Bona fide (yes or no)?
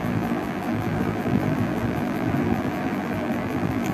no